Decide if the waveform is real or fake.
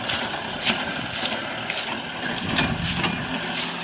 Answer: real